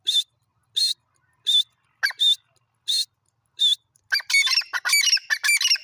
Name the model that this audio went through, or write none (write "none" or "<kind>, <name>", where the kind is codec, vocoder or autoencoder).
none